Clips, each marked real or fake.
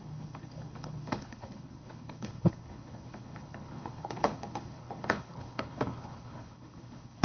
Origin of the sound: fake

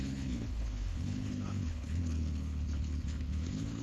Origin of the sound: fake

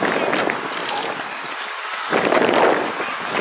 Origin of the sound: real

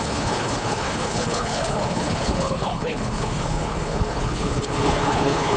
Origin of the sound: fake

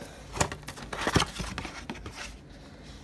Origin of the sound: real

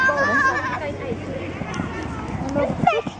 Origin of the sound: real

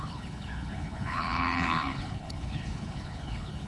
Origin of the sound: fake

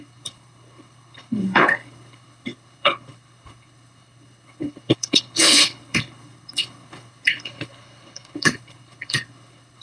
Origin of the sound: fake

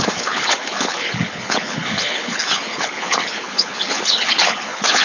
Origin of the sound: fake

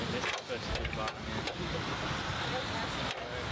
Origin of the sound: real